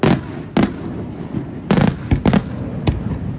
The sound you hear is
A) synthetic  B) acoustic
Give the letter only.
B